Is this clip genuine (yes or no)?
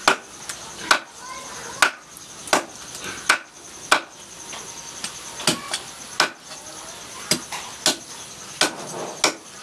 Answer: yes